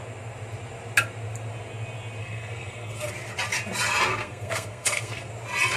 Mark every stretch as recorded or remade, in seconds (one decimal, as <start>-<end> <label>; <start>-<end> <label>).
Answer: 0.0-2.2 recorded; 2.2-3.1 remade; 3.1-4.1 recorded; 4.1-5.3 remade; 5.3-5.8 recorded